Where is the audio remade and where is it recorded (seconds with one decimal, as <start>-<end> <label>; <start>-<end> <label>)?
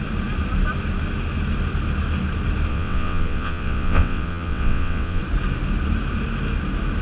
0.0-2.7 recorded; 2.7-5.2 remade; 5.2-7.0 recorded